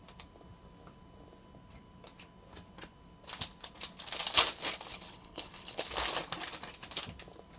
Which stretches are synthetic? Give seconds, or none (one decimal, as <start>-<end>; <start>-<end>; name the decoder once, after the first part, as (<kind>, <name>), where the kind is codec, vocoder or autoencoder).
4.9-5.8 (codec, HILCodec)